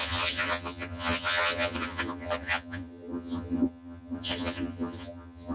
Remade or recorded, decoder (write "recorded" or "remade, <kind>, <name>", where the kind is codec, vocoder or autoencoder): remade, vocoder, HiFi-GAN